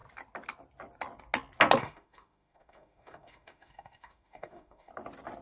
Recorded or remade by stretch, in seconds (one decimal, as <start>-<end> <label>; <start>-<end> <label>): 0.0-1.8 recorded; 1.8-4.9 remade; 4.9-5.4 recorded